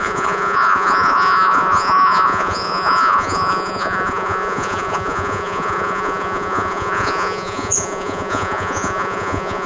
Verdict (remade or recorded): remade